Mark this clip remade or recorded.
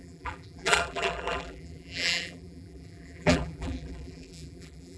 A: remade